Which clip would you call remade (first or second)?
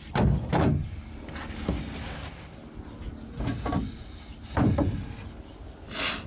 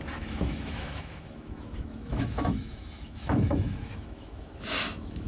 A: second